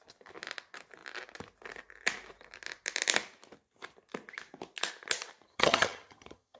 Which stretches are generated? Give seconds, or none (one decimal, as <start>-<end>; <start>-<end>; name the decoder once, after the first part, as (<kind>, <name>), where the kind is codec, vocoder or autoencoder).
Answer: 5.5-6.6 (vocoder, HiFi-GAN)